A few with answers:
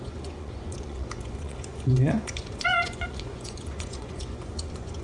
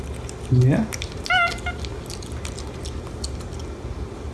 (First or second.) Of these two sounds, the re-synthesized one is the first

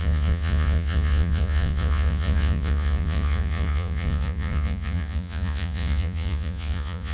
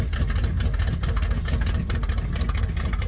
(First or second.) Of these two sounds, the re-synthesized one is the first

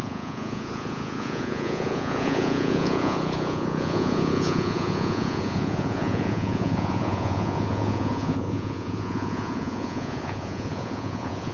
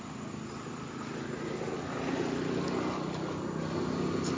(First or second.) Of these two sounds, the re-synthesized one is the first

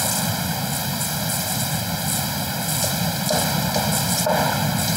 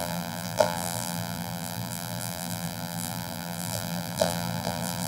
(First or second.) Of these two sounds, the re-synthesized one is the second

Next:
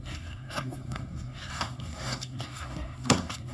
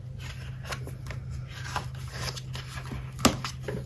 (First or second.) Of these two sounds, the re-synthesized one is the first